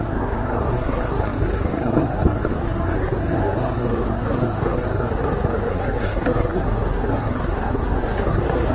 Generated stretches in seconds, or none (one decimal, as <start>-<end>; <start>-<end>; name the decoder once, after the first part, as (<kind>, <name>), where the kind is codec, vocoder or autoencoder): 0.0-8.7 (codec, SNAC)